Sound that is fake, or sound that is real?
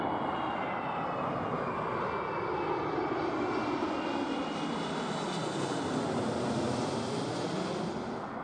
real